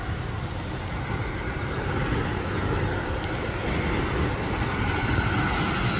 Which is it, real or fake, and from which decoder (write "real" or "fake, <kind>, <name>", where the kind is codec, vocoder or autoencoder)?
real